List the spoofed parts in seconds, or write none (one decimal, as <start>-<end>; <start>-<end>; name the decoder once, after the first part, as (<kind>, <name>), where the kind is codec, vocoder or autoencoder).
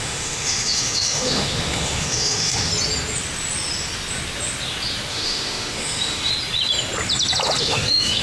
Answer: 0.0-2.7 (autoencoder, DAC-VAE); 5.1-6.3; 7.6-8.2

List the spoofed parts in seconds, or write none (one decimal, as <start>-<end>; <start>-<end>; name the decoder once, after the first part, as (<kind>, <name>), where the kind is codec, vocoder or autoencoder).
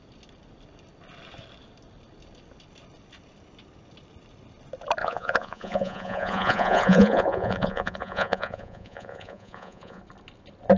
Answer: 5.0-10.0 (vocoder, Vocos)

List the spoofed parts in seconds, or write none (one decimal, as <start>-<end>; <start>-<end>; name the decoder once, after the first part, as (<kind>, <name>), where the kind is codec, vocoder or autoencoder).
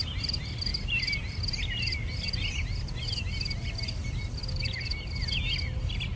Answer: none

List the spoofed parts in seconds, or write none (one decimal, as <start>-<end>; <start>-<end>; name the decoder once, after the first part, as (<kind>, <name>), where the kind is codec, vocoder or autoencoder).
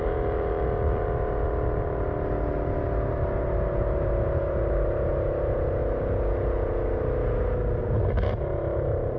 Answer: 0.0-5.8 (vocoder, BigVGAN v2); 7.8-9.2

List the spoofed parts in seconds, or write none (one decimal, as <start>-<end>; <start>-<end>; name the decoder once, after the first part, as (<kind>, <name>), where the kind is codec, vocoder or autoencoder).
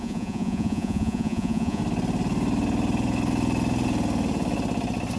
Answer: 0.0-1.8 (vocoder, Vocos)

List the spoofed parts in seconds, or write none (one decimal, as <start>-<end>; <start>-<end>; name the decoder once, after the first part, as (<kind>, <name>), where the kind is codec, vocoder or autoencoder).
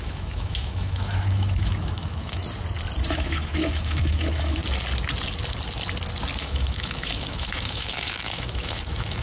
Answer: 0.0-2.4 (autoencoder, DAC-VAE); 3.1-4.6; 6.4-9.2